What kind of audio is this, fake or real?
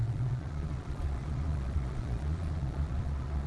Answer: fake